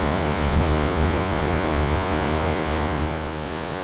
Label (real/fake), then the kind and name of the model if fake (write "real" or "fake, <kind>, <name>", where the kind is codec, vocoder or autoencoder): fake, vocoder, Vocos